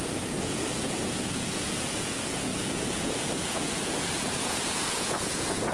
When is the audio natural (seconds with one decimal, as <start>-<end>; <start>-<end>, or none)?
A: none